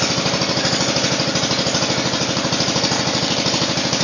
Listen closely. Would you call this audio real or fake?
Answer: real